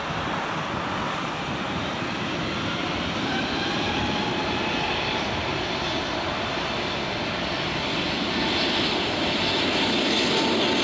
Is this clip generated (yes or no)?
no